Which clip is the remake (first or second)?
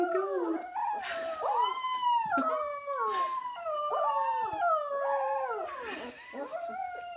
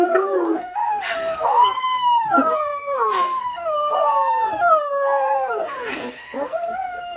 second